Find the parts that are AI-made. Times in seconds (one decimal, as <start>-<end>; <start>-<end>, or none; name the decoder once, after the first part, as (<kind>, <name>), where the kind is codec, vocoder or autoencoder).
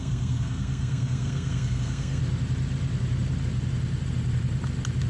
0.0-2.2 (codec, SNAC)